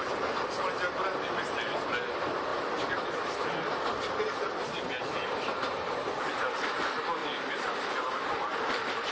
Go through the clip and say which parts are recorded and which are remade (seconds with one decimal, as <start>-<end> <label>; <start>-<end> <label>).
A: 0.0-7.2 recorded; 7.2-9.1 remade